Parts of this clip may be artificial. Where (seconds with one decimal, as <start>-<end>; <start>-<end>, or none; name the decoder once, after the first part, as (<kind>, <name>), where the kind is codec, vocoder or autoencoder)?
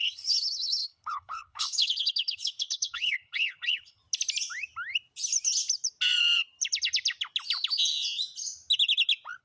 0.0-4.0 (codec, HILCodec)